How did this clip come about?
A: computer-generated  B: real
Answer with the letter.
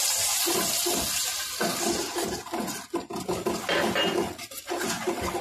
B